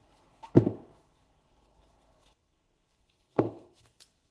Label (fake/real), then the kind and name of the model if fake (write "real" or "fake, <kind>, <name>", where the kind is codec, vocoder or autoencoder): fake, codec, SNAC